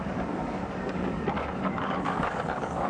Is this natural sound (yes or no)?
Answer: no